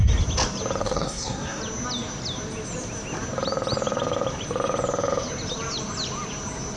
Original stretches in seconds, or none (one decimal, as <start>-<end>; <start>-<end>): 0.0-0.8; 1.6-6.8